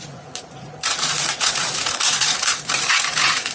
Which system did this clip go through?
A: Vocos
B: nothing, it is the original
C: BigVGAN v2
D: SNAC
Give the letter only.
A